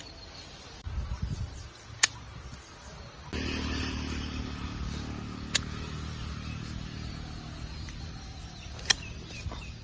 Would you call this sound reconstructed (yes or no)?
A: no